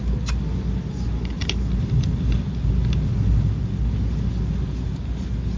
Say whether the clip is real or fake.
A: real